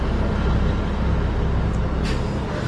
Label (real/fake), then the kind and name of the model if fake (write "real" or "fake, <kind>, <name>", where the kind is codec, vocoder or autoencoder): real